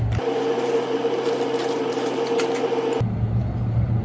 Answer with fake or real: real